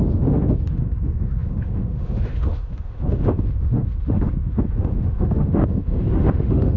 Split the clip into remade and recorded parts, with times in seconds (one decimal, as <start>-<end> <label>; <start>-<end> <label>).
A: 0.0-6.8 remade